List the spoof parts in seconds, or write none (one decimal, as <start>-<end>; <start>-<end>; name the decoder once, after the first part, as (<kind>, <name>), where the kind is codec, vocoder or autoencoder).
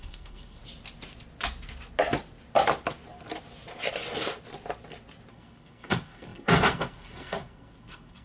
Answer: 0.0-0.6 (codec, SNAC); 5.3-8.2